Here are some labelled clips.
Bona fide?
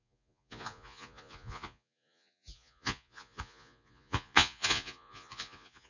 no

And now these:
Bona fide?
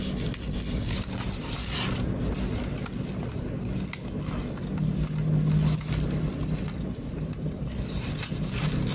yes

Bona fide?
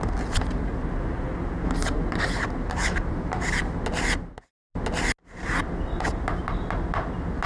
yes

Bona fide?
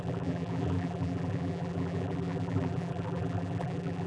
no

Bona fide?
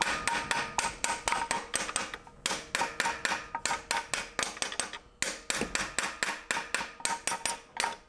yes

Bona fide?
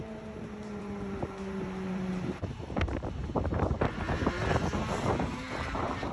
no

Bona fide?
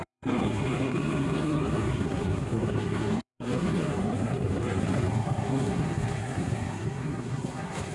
no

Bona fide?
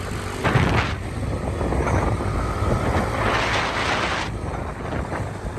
yes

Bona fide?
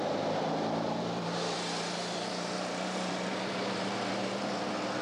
no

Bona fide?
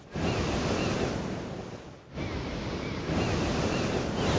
yes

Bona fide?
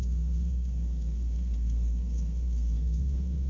no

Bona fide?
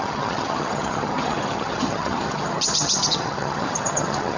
no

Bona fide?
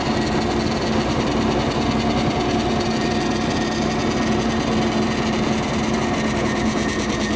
yes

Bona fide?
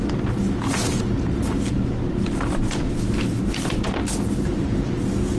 yes